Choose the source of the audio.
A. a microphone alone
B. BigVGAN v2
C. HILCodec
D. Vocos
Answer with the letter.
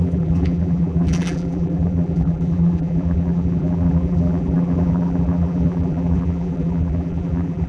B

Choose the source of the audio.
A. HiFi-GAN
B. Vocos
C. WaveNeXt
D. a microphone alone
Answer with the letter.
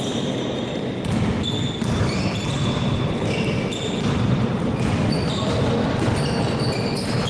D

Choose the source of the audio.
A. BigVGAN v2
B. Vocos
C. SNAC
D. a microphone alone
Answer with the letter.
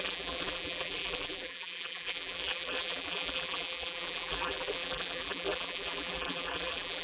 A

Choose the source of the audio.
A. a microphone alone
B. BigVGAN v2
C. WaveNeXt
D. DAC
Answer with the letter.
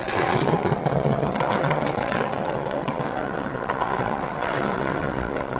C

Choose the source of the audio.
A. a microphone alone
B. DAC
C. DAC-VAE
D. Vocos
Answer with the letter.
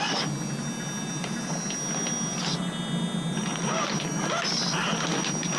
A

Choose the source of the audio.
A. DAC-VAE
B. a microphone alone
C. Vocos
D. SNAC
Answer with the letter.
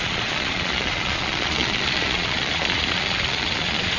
C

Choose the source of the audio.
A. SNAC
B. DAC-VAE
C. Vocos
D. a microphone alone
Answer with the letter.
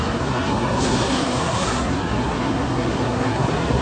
A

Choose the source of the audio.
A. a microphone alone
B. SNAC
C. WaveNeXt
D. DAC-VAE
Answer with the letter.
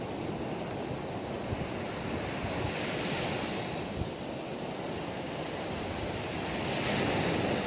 A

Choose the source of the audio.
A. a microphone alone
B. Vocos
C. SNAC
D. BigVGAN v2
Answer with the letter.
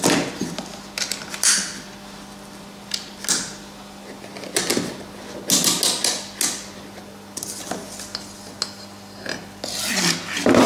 A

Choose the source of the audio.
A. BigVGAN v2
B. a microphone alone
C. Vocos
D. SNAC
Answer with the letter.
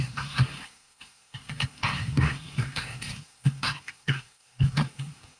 D